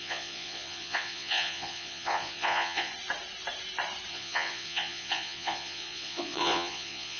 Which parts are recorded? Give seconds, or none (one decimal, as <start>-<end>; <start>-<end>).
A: 2.9-4.1